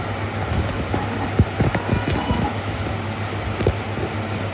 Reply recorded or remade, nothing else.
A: recorded